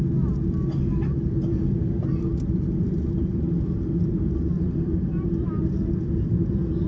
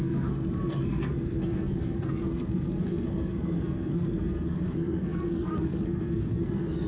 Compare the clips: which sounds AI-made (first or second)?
second